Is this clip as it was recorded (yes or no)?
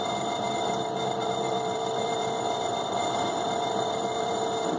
no